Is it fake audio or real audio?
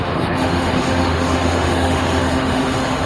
fake